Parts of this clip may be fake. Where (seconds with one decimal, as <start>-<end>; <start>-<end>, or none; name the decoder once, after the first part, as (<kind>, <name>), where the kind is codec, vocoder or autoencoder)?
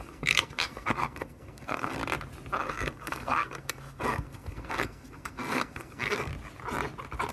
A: 0.0-2.0 (codec, SNAC); 2.6-6.3